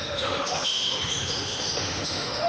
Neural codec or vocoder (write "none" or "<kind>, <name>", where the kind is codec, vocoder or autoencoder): autoencoder, DAC-VAE